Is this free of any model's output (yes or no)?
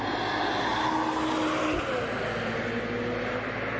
yes